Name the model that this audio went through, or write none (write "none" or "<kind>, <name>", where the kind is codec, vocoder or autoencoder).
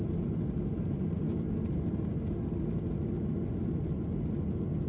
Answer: none